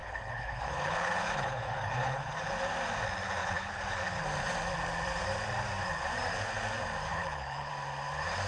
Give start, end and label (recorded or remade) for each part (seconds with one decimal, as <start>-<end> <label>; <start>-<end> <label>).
0.0-2.5 remade; 2.5-3.4 recorded; 3.4-4.0 remade; 4.0-7.1 recorded; 7.1-7.7 remade; 7.7-8.5 recorded